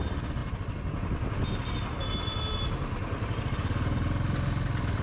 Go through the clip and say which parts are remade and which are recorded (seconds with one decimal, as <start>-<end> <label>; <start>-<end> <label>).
0.0-5.0 recorded